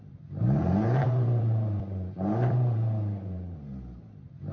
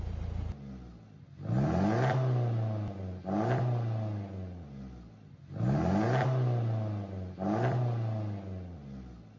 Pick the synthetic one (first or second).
first